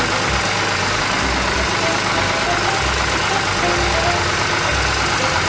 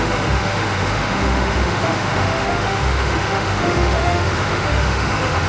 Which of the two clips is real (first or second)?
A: first